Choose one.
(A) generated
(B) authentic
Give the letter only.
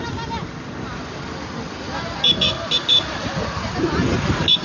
B